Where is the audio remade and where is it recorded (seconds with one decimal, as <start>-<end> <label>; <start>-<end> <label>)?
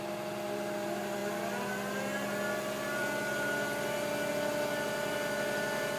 0.0-6.0 recorded